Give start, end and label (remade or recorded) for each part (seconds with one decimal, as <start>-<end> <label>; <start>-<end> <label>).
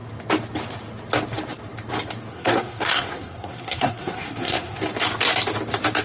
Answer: 0.0-2.3 recorded; 2.3-4.8 remade; 4.8-6.0 recorded